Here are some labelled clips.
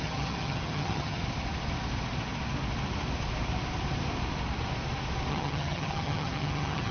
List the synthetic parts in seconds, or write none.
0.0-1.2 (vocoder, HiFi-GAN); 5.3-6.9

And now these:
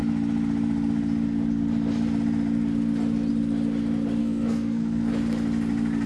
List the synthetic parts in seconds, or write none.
4.2-5.1 (codec, SNAC)

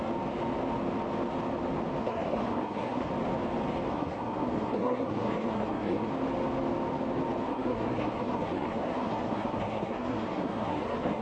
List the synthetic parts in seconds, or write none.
2.0-3.1 (codec, SNAC); 3.9-6.1; 7.5-11.2

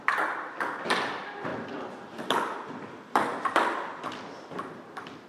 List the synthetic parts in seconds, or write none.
none

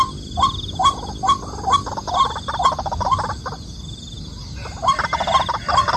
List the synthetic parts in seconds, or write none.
none

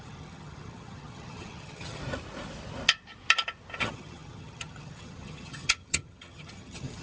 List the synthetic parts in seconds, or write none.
0.0-2.0 (vocoder, HiFi-GAN); 3.8-7.0

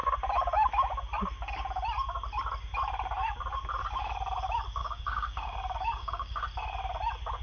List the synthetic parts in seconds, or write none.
4.8-6.4 (codec, DAC)